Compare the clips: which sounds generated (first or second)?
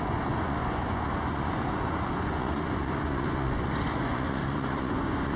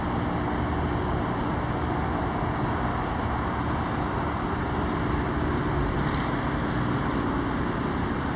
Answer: first